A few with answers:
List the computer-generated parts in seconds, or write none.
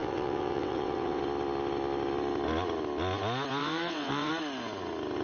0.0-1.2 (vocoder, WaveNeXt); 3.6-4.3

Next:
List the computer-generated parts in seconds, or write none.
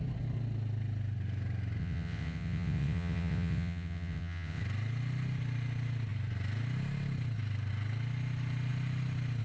1.8-4.6 (vocoder, WaveNeXt)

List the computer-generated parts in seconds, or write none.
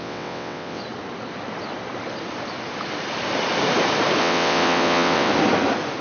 0.0-0.8 (vocoder, WaveNeXt); 4.2-5.3